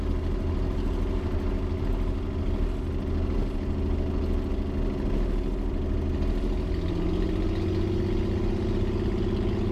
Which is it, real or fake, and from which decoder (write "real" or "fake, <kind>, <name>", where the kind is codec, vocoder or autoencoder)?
real